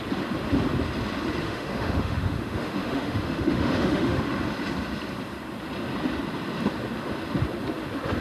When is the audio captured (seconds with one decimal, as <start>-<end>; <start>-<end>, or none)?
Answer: 0.0-1.4; 4.2-8.2